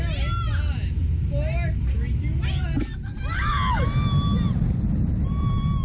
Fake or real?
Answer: real